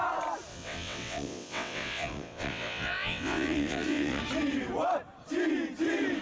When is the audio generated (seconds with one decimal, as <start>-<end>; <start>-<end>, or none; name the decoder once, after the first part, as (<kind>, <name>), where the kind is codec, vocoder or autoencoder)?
0.5-4.2 (vocoder, WaveNeXt)